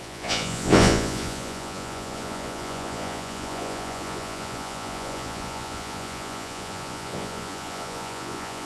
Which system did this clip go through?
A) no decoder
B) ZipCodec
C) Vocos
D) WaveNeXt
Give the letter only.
C